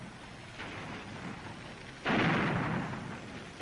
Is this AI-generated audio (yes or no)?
no